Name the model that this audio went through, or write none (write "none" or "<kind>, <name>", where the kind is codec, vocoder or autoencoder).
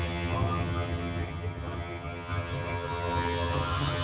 vocoder, HiFi-GAN